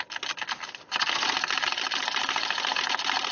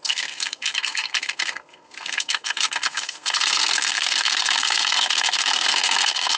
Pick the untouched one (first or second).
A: first